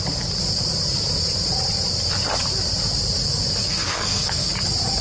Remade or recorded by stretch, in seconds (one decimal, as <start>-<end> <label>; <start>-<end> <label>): 0.0-3.6 recorded; 3.6-4.5 remade; 4.5-5.0 recorded